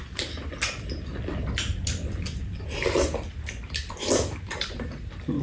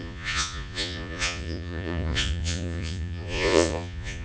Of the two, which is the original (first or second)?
first